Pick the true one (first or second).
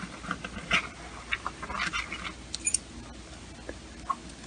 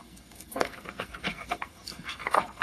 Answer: first